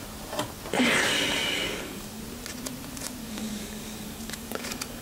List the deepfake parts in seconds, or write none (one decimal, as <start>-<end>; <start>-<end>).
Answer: 1.4-2.2; 3.2-5.0